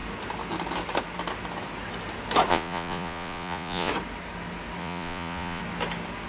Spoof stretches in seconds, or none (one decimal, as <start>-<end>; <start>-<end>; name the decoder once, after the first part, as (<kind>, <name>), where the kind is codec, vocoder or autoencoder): 2.5-3.9 (vocoder, Vocos); 4.8-5.6